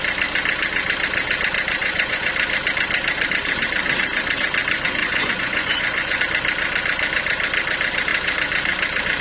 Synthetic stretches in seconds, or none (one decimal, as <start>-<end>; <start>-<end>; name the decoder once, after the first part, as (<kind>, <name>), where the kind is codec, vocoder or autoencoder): 1.8-2.3 (vocoder, Vocos); 5.0-6.2